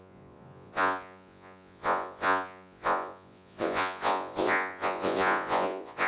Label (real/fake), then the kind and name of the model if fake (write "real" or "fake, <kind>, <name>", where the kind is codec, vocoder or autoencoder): fake, vocoder, Vocos